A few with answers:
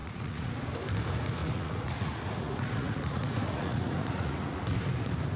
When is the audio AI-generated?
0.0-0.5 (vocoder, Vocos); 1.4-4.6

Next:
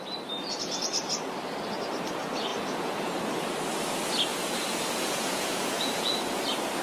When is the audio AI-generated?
2.5-3.2 (vocoder, Vocos); 4.3-6.2

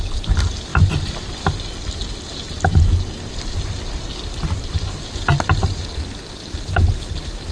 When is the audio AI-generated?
none

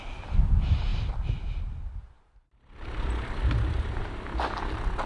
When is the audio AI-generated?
none

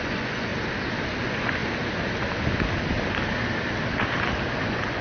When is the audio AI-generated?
0.0-0.5 (vocoder, Vocos); 1.1-1.6; 4.6-5.0

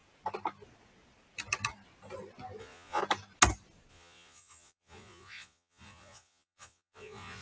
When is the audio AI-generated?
2.6-3.0 (vocoder, Vocos); 3.9-7.4